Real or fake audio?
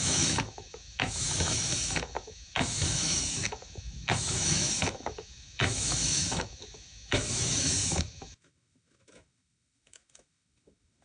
fake